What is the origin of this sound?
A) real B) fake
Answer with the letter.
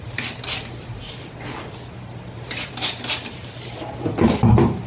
A